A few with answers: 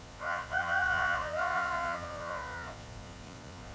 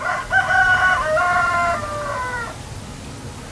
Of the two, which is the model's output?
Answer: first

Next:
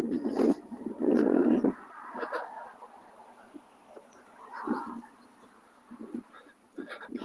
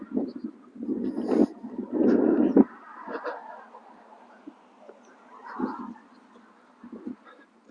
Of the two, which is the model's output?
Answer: first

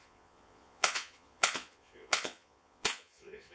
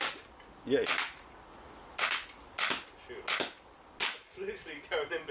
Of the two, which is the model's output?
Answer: first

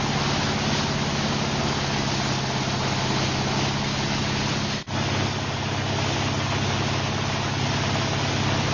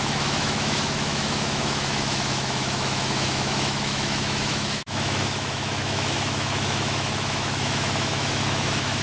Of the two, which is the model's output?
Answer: second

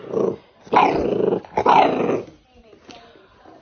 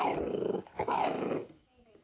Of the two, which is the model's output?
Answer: second